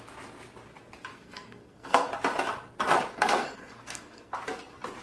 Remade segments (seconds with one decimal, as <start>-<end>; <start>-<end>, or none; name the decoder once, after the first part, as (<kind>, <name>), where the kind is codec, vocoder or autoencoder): 1.1-2.1 (codec, SNAC); 3.1-4.3